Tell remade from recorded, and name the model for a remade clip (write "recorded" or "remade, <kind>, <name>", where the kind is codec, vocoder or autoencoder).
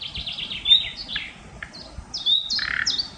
recorded